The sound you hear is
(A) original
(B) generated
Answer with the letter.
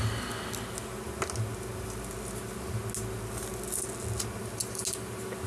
A